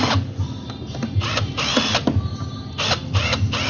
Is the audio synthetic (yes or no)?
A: no